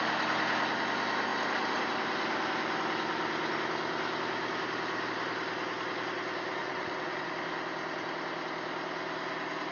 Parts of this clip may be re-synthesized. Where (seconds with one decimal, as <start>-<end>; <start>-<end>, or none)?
6.6-7.3